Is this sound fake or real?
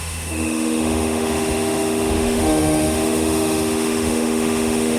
fake